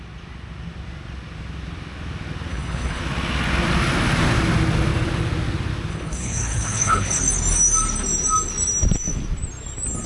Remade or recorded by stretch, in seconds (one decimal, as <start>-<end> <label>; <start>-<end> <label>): 0.0-2.5 recorded; 2.5-3.0 remade; 3.0-5.9 recorded; 5.9-7.2 remade; 7.2-10.1 recorded